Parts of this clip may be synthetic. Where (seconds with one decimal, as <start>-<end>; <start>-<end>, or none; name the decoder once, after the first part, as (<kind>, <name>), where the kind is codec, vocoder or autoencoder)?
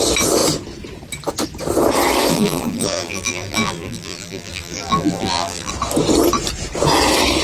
2.3-5.7 (vocoder, BigVGAN v2)